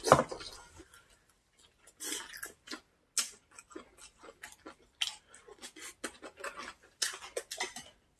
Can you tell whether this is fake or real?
real